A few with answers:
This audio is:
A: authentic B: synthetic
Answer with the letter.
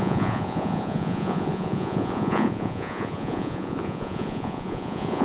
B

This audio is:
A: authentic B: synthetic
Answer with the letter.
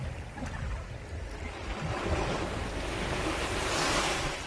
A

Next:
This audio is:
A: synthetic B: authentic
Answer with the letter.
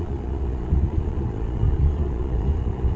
A